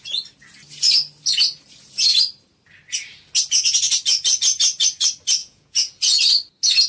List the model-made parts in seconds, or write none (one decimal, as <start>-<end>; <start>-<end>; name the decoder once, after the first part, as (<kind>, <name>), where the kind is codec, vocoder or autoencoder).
5.4-6.2 (vocoder, Vocos)